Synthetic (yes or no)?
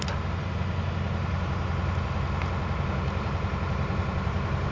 no